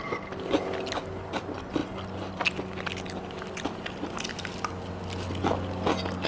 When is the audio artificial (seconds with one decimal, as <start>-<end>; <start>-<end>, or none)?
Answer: none